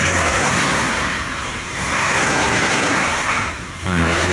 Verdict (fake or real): fake